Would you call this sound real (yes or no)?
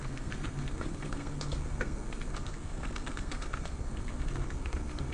no